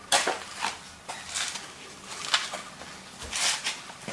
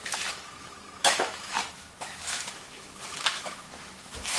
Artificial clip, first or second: second